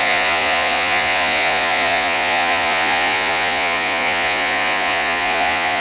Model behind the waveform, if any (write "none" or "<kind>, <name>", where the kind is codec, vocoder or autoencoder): vocoder, Vocos